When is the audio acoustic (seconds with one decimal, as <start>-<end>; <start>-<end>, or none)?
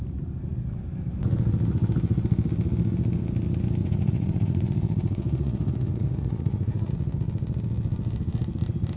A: 0.0-3.8; 6.9-9.0